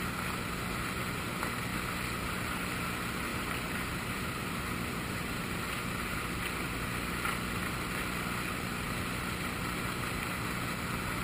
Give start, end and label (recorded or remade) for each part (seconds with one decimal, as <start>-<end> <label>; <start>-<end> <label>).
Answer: 0.0-3.3 recorded; 3.3-6.0 remade; 6.0-11.2 recorded

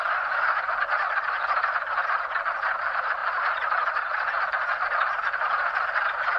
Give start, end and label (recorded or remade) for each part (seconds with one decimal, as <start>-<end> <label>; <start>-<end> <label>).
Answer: 0.0-3.2 remade; 3.2-3.9 recorded; 3.9-6.4 remade

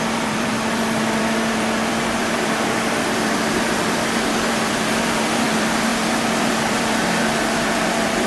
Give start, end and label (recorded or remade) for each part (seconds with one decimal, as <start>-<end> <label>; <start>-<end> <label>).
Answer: 0.0-8.3 remade